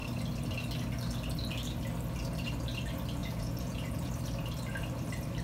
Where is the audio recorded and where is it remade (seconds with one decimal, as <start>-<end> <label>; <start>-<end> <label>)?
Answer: 0.0-3.2 recorded; 3.2-4.1 remade; 4.1-5.4 recorded